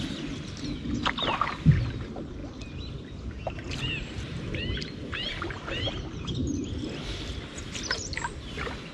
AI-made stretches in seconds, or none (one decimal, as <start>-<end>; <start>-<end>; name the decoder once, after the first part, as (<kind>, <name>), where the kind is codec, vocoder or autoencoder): none